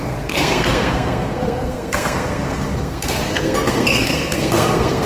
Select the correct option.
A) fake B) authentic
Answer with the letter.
A